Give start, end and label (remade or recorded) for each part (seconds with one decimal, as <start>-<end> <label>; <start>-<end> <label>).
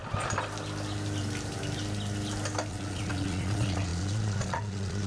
0.0-2.7 recorded; 2.7-5.1 remade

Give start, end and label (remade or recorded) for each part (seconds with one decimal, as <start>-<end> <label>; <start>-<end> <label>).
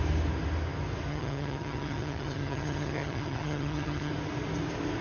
0.0-1.1 recorded; 1.1-4.1 remade; 4.1-5.0 recorded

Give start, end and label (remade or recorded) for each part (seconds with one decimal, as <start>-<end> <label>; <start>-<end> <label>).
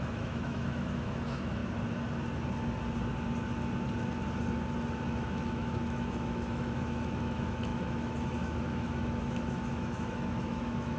0.0-1.6 remade; 1.6-5.1 recorded; 5.1-11.0 remade